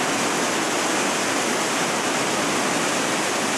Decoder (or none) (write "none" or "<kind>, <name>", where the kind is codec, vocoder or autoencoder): none